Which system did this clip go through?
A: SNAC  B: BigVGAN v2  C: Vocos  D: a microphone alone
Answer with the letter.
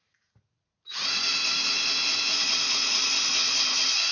C